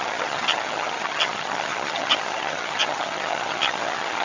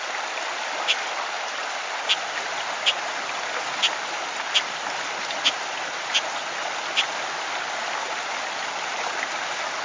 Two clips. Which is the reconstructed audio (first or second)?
first